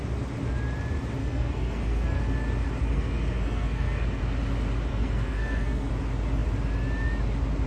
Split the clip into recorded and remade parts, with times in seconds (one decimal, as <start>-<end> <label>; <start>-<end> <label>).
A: 0.0-1.2 recorded; 1.2-2.2 remade; 2.2-2.8 recorded; 2.8-4.2 remade; 4.2-4.9 recorded; 4.9-5.9 remade; 5.9-7.7 recorded